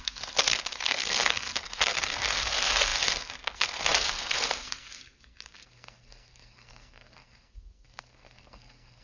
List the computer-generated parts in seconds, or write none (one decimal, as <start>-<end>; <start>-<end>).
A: 0.0-9.0